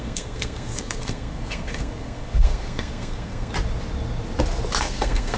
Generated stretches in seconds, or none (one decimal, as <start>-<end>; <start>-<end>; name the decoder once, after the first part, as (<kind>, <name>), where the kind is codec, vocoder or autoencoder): 0.0-3.5 (codec, SNAC); 4.8-5.4